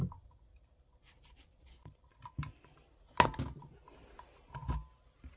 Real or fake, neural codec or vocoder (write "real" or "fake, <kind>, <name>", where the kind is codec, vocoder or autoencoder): real